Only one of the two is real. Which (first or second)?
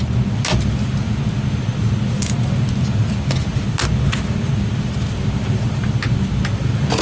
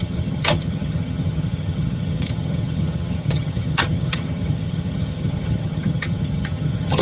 first